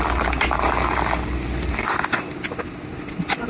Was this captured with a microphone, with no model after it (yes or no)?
yes